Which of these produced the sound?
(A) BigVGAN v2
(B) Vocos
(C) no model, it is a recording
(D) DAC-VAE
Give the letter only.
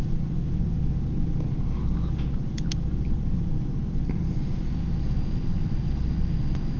C